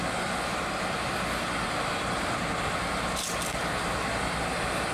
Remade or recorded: recorded